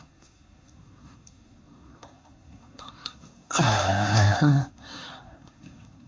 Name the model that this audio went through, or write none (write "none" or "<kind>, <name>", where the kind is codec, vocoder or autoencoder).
codec, SNAC